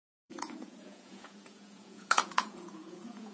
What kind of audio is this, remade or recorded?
remade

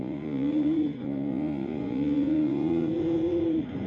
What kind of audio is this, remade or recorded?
remade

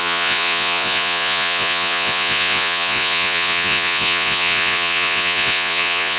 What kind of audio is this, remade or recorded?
remade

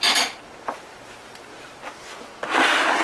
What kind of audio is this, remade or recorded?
recorded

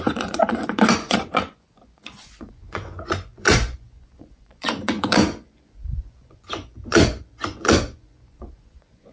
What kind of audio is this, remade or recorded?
remade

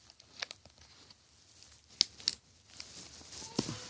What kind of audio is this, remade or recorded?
recorded